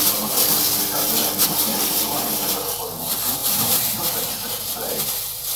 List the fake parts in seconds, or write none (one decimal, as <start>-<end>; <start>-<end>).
1.7-2.5; 3.4-5.0